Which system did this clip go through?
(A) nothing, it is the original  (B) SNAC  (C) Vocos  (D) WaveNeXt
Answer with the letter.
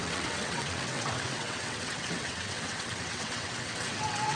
D